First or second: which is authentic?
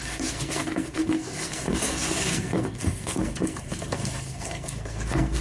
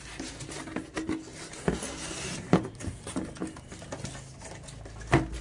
second